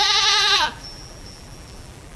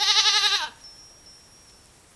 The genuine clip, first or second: second